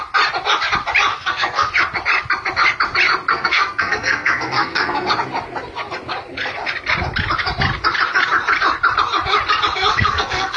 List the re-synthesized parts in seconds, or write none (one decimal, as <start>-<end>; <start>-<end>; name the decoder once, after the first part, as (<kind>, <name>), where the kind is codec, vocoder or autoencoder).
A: 1.1-1.7 (codec, SNAC); 3.3-5.1; 9.9-10.6